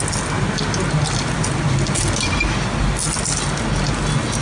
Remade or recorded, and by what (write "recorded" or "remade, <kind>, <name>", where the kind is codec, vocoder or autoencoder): recorded